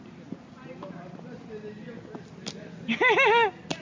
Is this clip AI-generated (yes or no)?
no